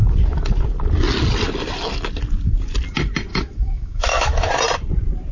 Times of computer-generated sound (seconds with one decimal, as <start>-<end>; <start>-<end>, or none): 3.3-4.5

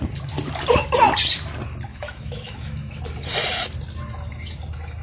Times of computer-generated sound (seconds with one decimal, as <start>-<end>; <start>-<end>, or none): 1.9-3.0